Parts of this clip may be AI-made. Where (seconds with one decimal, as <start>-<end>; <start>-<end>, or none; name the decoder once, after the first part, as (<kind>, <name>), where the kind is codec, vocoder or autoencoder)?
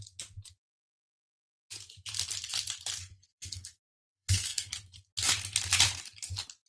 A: 3.3-4.7 (codec, SNAC)